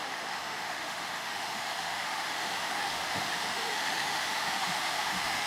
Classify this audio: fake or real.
fake